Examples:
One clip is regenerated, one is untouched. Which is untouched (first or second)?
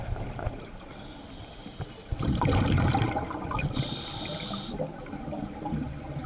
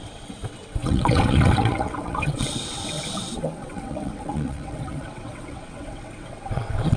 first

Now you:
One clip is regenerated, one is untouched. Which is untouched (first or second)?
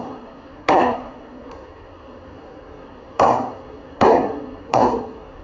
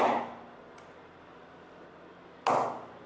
second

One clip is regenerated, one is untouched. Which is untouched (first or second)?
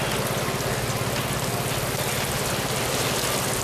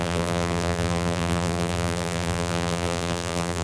first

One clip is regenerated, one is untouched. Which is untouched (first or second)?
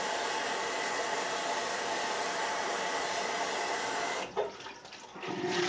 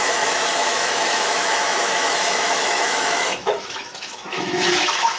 first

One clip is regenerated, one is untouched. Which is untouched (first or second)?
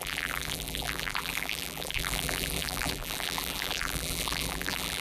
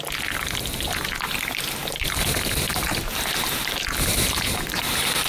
second